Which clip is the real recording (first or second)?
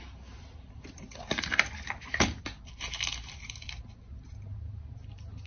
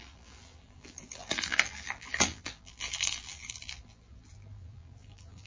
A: first